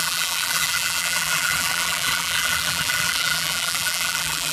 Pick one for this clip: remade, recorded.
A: remade